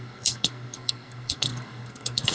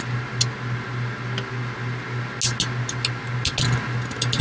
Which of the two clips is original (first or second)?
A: second